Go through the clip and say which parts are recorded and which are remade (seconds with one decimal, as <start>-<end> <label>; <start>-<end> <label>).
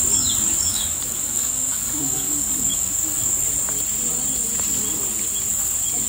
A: 0.0-0.7 recorded; 0.7-3.4 remade; 3.4-6.1 recorded